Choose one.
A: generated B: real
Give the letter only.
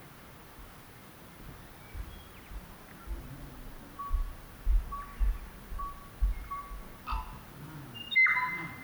B